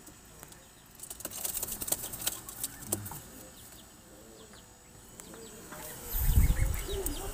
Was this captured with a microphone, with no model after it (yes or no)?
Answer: yes